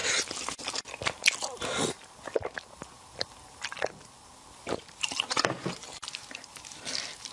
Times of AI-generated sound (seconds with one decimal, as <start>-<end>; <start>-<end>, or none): none